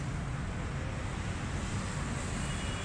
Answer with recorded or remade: recorded